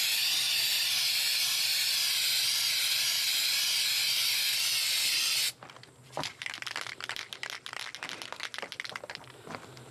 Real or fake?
real